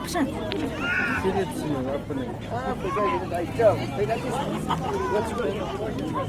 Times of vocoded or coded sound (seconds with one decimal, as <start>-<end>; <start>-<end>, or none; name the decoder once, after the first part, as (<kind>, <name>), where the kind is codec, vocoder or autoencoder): none